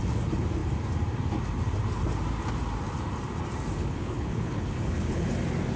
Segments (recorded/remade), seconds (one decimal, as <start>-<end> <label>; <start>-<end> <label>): 0.0-3.8 recorded; 3.8-5.2 remade; 5.2-5.8 recorded